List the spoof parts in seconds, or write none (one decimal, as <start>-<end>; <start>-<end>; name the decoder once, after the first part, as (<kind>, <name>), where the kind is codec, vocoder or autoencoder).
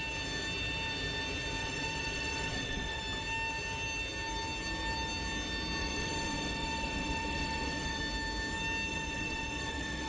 1.6-3.0 (vocoder, WaveNeXt); 5.8-8.0; 8.9-10.1